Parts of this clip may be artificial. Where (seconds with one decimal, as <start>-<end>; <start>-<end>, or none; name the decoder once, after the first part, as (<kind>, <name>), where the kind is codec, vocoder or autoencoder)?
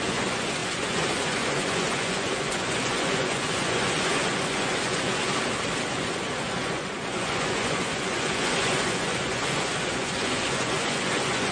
0.0-5.3 (vocoder, Vocos); 5.9-11.5